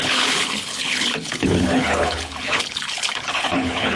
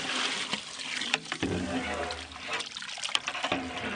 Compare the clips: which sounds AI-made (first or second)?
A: first